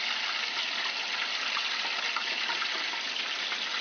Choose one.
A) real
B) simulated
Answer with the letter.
A